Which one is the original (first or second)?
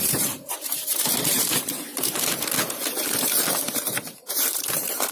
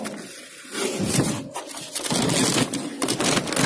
second